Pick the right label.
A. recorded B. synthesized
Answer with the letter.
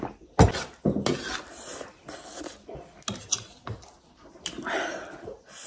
A